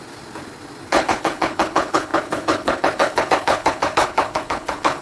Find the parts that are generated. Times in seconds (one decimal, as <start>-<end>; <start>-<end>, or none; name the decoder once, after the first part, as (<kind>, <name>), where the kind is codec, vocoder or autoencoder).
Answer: 0.9-5.0 (codec, HILCodec)